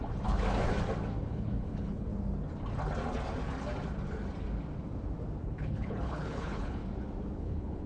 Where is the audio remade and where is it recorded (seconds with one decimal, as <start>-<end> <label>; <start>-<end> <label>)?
0.0-1.2 recorded; 1.2-2.1 remade; 2.1-5.4 recorded; 5.4-6.8 remade; 6.8-7.4 recorded; 7.4-7.9 remade